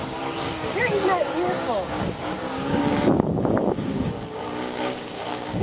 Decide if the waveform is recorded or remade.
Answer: remade